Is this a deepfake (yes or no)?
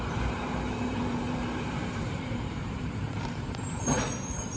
yes